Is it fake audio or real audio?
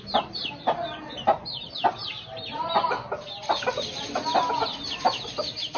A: real